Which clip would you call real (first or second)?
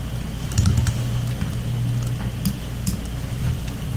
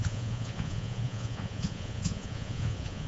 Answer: first